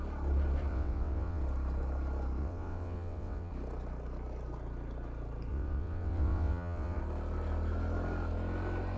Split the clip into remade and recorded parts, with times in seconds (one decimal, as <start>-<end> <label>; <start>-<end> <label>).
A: 0.0-0.7 recorded; 0.7-1.4 remade; 1.4-2.4 recorded; 2.4-3.5 remade; 3.5-5.5 recorded; 5.5-7.0 remade; 7.0-9.0 recorded

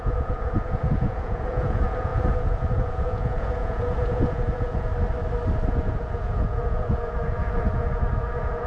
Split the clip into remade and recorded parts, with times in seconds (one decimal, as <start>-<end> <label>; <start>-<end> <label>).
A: 0.0-4.9 remade; 4.9-5.7 recorded; 5.7-8.7 remade

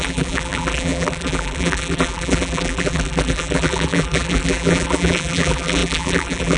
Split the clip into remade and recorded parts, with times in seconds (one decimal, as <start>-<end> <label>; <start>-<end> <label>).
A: 0.0-6.6 remade

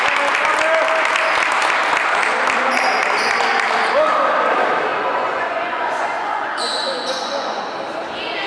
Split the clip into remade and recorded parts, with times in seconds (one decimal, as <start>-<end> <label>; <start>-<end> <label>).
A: 0.0-4.9 recorded; 4.9-7.6 remade; 7.6-8.5 recorded

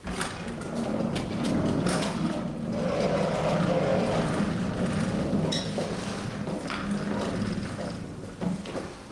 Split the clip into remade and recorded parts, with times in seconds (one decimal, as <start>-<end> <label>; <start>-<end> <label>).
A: 0.0-0.9 recorded; 0.9-2.5 remade; 2.5-9.1 recorded